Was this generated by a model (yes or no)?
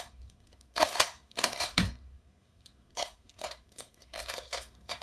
yes